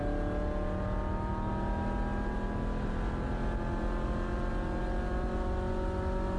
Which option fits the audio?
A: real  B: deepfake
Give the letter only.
A